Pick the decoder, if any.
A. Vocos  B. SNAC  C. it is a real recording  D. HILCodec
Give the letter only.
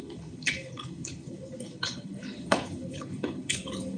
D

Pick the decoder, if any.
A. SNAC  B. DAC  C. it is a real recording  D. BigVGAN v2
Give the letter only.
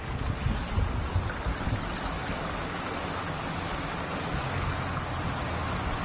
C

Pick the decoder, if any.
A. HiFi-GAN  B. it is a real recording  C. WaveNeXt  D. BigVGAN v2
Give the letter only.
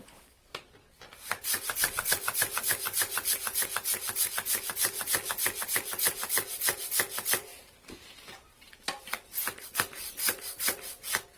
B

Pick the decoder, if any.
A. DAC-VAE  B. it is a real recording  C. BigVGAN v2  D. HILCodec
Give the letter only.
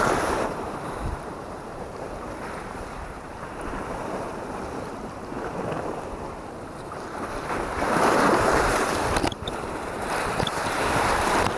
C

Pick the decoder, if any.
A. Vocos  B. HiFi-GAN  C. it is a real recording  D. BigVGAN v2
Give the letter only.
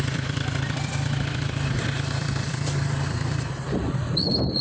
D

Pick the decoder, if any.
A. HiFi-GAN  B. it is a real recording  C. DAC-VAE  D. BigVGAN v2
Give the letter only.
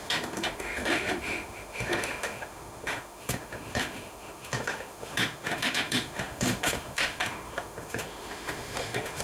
C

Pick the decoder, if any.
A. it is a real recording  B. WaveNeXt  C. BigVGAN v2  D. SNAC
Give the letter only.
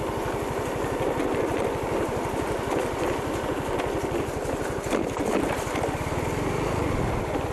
A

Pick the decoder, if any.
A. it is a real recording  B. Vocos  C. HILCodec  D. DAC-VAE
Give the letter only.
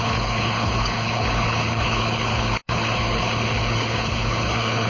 C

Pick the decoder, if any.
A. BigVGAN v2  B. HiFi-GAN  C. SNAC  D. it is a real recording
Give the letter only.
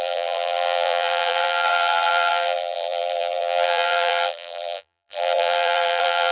A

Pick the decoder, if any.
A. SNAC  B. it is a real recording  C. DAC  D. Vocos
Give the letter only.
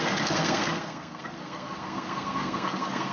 A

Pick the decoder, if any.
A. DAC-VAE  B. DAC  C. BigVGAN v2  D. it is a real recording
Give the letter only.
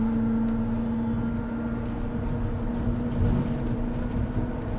D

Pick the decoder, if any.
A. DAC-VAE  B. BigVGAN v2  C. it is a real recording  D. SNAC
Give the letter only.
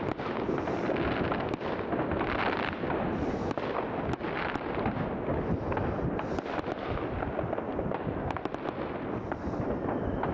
C